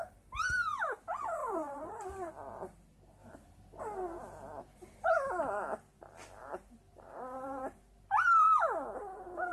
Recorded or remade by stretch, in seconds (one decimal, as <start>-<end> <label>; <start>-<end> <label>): 0.0-1.4 recorded; 1.4-2.3 remade; 2.3-6.4 recorded; 6.4-7.6 remade; 7.6-9.5 recorded